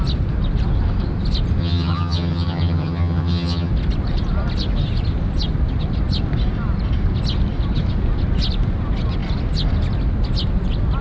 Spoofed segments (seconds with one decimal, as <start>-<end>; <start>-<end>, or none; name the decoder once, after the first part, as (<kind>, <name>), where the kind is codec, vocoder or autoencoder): 1.6-3.7 (vocoder, HiFi-GAN)